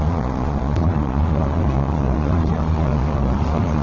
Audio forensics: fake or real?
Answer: fake